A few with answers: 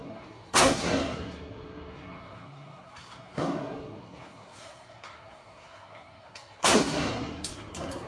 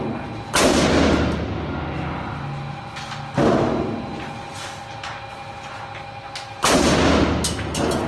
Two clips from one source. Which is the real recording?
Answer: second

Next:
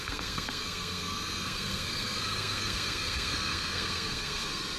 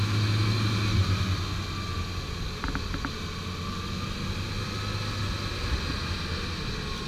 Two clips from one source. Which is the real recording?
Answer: second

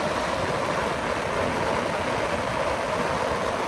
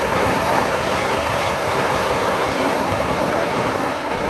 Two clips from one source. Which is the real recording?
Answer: first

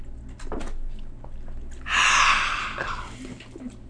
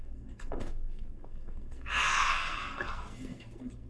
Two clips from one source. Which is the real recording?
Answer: first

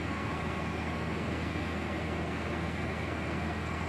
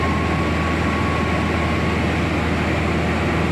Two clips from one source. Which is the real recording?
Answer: second